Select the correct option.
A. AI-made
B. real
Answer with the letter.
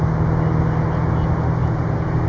B